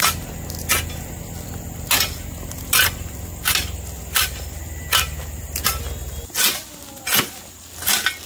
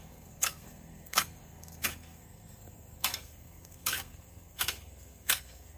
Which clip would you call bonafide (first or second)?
first